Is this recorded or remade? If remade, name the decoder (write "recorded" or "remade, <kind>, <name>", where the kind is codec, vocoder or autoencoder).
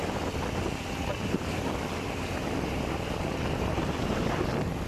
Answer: recorded